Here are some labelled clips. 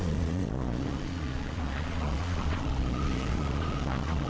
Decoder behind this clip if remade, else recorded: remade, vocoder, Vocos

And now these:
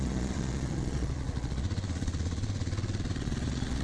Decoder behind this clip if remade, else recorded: remade, vocoder, Vocos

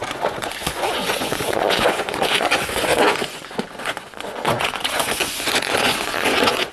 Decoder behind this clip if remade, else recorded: remade, vocoder, Vocos